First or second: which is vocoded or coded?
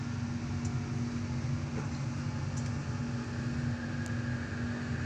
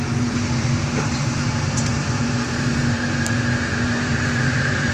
second